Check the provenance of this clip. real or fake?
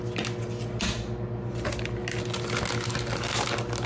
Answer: real